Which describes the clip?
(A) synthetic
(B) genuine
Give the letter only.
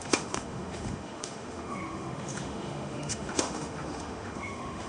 A